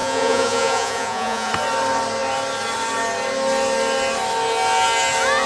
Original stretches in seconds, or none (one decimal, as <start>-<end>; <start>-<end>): 1.5-5.5